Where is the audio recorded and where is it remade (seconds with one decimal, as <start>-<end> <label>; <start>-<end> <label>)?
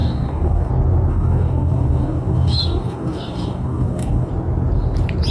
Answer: 0.0-0.7 remade; 0.7-1.1 recorded; 1.1-4.3 remade; 4.3-5.3 recorded